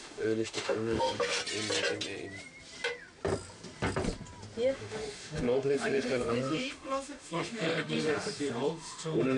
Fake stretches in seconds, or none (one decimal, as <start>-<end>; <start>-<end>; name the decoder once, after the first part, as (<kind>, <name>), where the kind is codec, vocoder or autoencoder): 0.0-1.4 (autoencoder, DAC-VAE); 4.7-9.4